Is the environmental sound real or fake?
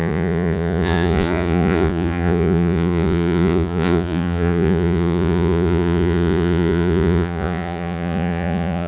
fake